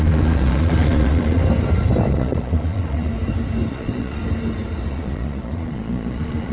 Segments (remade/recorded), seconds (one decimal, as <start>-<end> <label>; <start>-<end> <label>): 0.0-1.4 remade; 1.4-2.1 recorded; 2.1-3.1 remade; 3.1-3.7 recorded; 3.7-4.2 remade; 4.2-4.9 recorded; 4.9-6.5 remade